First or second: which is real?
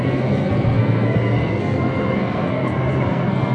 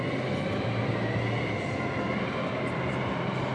second